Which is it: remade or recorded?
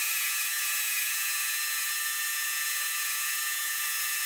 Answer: remade